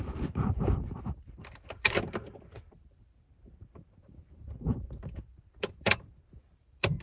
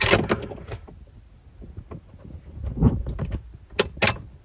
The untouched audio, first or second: second